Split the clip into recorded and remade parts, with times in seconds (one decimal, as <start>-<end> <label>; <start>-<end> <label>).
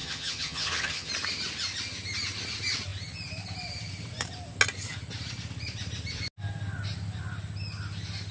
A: 0.0-1.1 remade; 1.1-8.3 recorded